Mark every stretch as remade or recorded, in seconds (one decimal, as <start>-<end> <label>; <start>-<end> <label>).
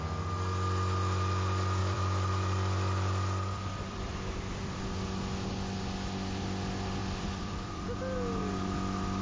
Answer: 0.0-1.8 recorded; 1.8-4.8 remade; 4.8-7.0 recorded; 7.0-7.8 remade; 7.8-9.2 recorded